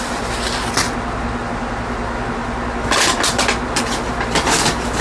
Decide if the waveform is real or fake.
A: real